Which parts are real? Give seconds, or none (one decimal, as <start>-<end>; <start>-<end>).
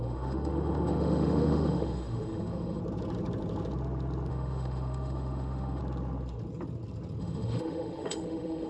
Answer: 2.8-4.3; 5.8-7.2